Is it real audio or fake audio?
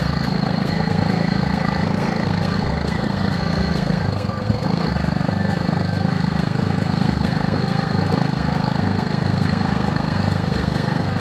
fake